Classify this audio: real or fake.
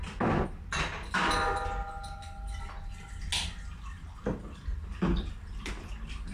real